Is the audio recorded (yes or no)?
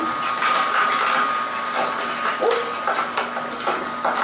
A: yes